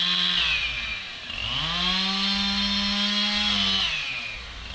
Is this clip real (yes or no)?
yes